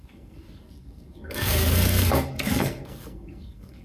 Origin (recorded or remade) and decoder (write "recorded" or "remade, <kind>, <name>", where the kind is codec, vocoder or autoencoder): remade, codec, SNAC